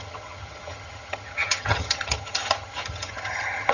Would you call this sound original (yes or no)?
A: no